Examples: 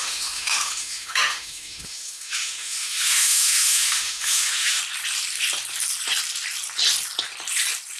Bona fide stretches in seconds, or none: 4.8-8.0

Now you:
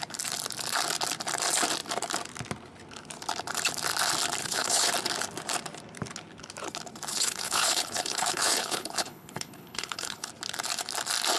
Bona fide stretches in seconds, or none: 0.0-4.4; 4.9-7.1; 10.3-11.4

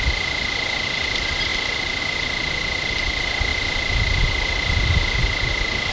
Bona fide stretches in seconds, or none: 0.0-5.9

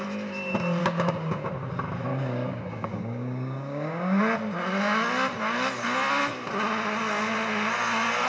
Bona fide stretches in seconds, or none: 0.0-0.8; 1.5-2.1; 4.2-8.3

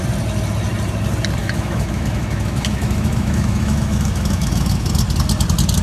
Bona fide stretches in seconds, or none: 0.0-1.4; 4.9-5.8

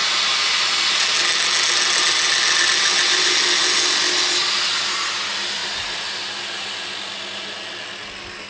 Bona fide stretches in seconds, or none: 0.0-8.5

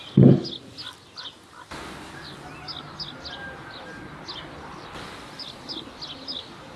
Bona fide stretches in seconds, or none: 0.0-6.8